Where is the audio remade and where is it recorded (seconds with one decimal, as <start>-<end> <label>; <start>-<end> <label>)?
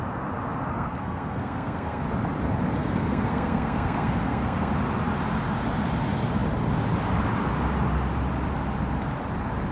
0.0-0.7 recorded; 0.7-2.0 remade; 2.0-2.8 recorded; 2.8-4.7 remade; 4.7-9.7 recorded